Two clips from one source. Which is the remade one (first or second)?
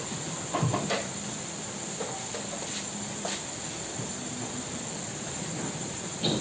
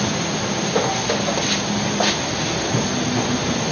first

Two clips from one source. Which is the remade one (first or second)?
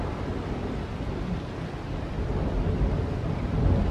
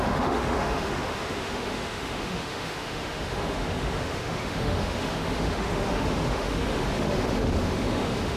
second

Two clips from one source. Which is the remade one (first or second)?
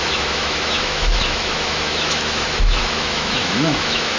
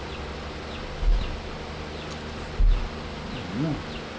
first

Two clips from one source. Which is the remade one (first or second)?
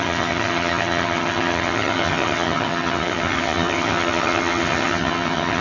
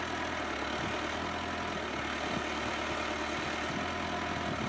first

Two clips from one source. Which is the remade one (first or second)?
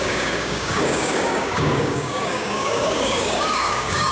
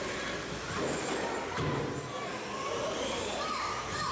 first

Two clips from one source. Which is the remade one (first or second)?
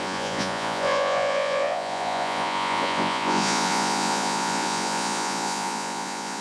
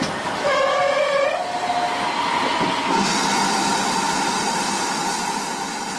first